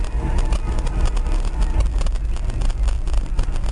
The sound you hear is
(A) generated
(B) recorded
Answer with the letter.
B